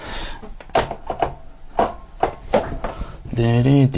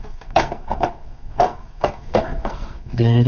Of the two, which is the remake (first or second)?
second